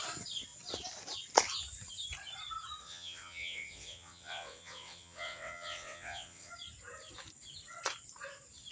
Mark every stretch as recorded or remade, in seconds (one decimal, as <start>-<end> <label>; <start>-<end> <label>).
0.0-2.8 recorded; 2.8-6.5 remade; 6.5-8.7 recorded